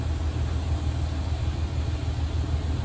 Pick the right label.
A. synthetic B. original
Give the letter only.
B